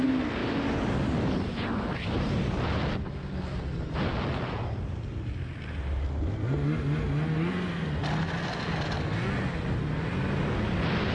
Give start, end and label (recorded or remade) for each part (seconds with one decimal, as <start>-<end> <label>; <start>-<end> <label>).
0.0-11.1 recorded